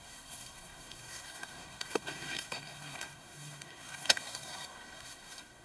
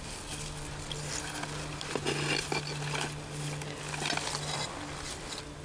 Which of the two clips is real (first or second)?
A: second